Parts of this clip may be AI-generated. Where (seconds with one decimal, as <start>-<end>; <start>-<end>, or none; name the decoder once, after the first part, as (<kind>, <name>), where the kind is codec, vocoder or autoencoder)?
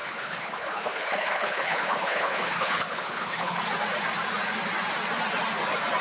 0.0-3.6 (codec, HILCodec)